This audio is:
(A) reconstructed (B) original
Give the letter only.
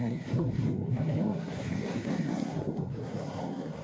A